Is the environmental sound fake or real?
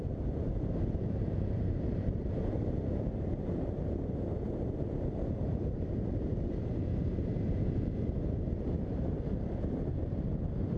fake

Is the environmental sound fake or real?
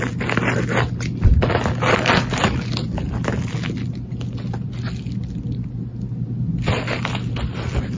real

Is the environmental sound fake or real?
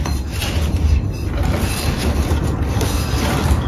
real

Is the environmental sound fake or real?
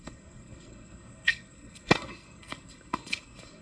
fake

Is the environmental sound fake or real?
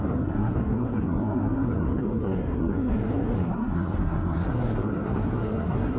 fake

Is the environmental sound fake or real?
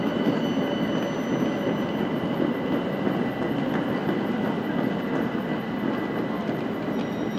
real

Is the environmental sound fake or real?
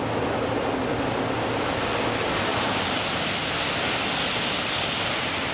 real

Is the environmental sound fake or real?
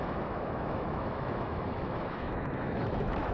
fake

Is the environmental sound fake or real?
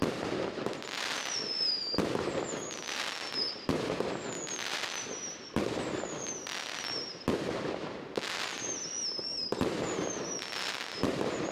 real